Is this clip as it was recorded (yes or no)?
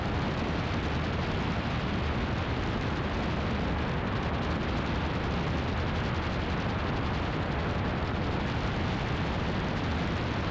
yes